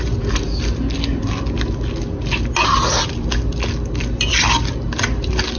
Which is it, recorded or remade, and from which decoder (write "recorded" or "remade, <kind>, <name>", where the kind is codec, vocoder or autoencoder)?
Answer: recorded